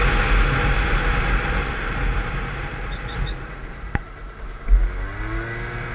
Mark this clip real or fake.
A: real